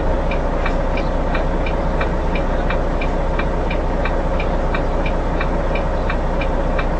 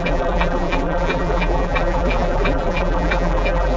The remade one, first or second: second